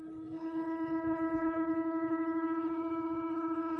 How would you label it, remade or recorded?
remade